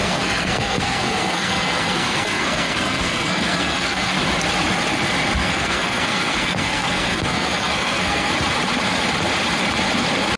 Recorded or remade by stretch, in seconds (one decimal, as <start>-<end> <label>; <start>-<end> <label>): 0.0-4.2 remade; 4.2-5.4 recorded; 5.4-8.3 remade; 8.3-10.4 recorded